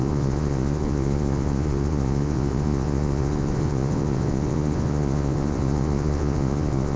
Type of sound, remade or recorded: remade